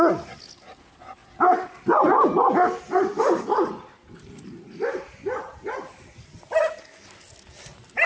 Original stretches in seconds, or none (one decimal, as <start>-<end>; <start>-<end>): 0.0-8.1